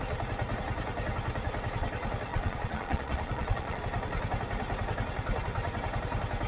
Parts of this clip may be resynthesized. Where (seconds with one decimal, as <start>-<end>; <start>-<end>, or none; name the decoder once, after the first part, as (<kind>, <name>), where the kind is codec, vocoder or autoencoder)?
2.3-3.8 (vocoder, Vocos)